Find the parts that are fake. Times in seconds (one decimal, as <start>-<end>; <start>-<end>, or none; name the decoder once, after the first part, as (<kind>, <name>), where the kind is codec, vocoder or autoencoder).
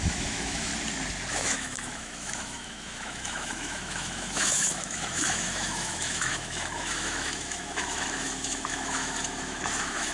0.0-0.7 (autoencoder, DAC-VAE); 1.3-10.1